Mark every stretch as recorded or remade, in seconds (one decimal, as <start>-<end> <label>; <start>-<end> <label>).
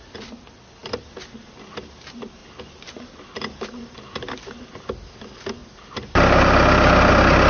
0.0-0.8 recorded; 0.8-1.4 remade; 1.4-7.5 recorded